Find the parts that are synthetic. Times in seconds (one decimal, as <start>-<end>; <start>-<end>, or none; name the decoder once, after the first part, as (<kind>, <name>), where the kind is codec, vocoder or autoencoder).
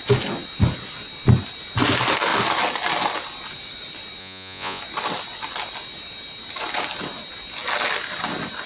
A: 4.2-4.8 (vocoder, Vocos)